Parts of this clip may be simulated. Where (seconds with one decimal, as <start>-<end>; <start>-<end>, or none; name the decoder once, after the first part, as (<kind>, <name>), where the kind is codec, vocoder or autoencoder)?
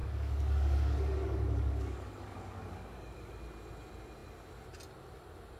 0.0-3.4 (codec, DAC)